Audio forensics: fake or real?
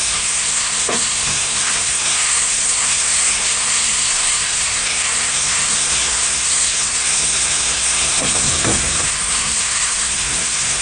fake